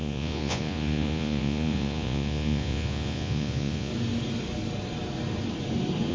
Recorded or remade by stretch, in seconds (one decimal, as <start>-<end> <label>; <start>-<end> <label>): 0.0-3.9 remade; 3.9-6.1 recorded